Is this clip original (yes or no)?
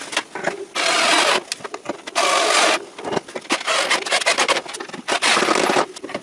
yes